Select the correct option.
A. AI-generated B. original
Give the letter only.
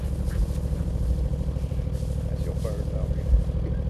B